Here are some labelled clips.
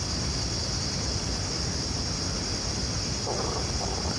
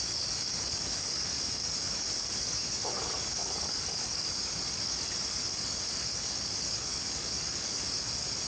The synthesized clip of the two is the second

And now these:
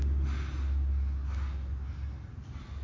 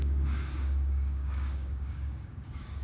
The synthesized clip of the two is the second